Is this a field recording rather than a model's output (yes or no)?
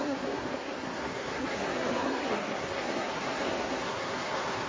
no